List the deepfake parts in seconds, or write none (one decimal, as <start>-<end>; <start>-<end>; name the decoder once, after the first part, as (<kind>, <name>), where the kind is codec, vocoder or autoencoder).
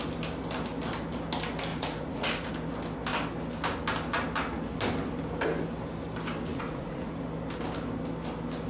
1.7-2.5 (vocoder, Vocos); 6.5-7.2